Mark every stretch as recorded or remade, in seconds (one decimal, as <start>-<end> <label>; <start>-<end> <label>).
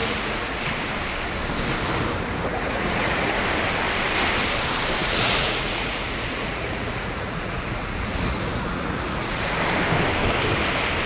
0.0-0.6 remade; 0.6-2.5 recorded; 2.5-3.4 remade; 3.4-5.0 recorded; 5.0-9.6 remade; 9.6-11.1 recorded